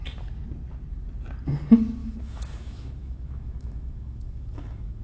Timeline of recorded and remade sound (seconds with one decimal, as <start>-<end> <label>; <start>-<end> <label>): 0.0-2.0 recorded; 2.0-5.0 remade